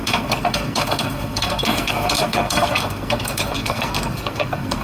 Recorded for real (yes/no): no